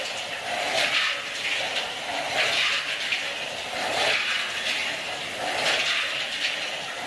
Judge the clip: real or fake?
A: fake